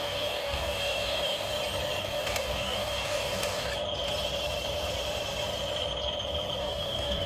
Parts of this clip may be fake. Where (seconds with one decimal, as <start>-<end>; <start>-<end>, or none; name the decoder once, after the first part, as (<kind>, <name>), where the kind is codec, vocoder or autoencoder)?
0.0-1.5 (codec, DAC); 2.0-3.7; 6.6-7.3